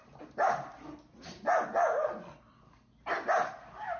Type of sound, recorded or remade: recorded